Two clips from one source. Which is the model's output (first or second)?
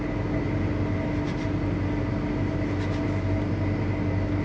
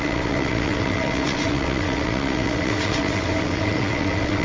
second